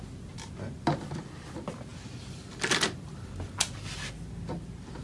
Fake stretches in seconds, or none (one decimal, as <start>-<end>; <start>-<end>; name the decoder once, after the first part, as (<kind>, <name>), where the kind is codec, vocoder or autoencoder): none